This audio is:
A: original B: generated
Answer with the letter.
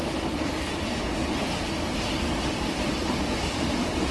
A